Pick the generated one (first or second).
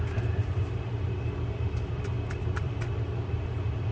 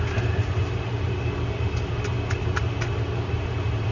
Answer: first